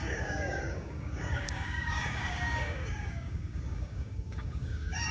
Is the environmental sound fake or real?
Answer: fake